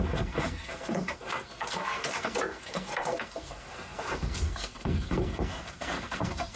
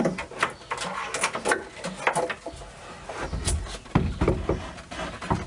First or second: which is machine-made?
first